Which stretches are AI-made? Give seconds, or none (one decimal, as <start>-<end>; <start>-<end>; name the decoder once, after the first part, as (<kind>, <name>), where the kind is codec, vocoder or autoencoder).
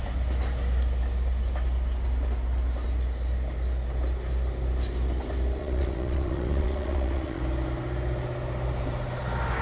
5.6-7.4 (vocoder, Vocos)